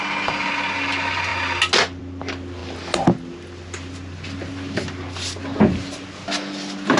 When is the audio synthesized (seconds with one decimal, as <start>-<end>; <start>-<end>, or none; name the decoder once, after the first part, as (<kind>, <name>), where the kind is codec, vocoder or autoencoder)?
none